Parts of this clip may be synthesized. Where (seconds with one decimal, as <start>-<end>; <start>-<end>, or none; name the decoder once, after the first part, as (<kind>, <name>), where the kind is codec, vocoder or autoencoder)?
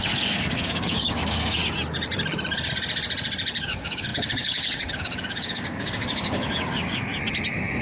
0.0-1.6 (codec, DAC); 3.6-7.1